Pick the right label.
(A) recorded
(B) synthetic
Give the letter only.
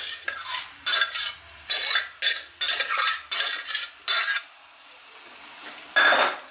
A